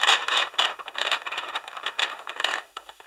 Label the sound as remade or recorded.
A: remade